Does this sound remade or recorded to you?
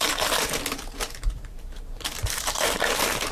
remade